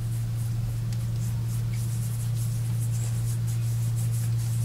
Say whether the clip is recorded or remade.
recorded